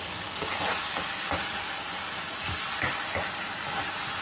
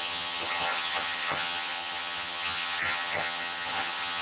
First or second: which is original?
first